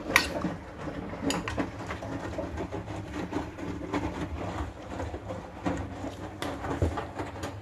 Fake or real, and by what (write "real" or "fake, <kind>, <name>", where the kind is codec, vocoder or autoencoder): real